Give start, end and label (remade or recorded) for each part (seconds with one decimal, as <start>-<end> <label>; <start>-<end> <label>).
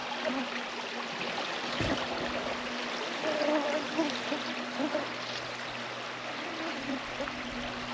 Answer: 0.0-7.9 recorded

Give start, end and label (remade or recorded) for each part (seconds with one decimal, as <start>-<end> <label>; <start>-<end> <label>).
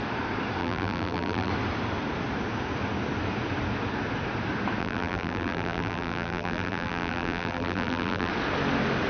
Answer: 0.0-0.6 recorded; 0.6-1.5 remade; 1.5-4.8 recorded; 4.8-8.3 remade; 8.3-9.1 recorded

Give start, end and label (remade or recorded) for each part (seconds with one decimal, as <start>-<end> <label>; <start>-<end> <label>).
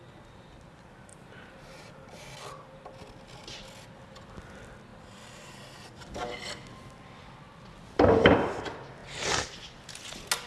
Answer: 0.0-1.1 recorded; 1.1-2.2 remade; 2.2-10.5 recorded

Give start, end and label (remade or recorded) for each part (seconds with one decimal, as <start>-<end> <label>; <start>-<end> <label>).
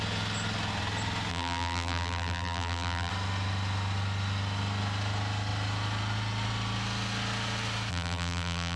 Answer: 0.0-1.3 recorded; 1.3-3.1 remade; 3.1-7.9 recorded; 7.9-8.8 remade